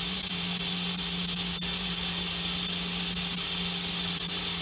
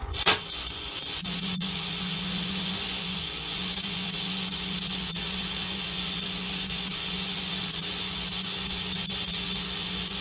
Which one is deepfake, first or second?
second